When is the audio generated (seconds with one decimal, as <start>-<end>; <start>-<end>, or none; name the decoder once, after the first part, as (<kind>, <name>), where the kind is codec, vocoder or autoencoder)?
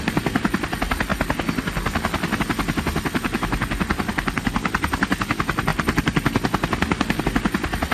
none